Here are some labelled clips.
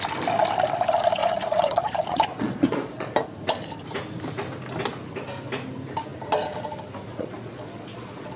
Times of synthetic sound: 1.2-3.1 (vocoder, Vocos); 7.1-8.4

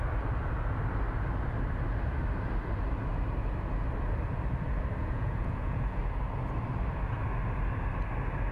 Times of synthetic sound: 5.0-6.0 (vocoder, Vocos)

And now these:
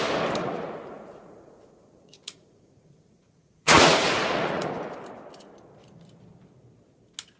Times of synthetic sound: 0.4-4.7 (vocoder, Vocos)

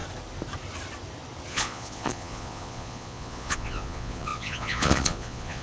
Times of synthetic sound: 1.5-5.6 (vocoder, Vocos)

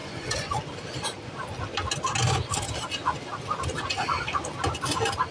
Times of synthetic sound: 0.0-0.5 (vocoder, Vocos)